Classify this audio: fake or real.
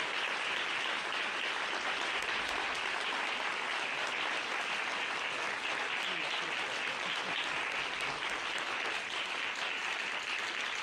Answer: real